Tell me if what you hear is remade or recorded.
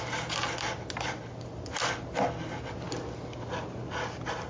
recorded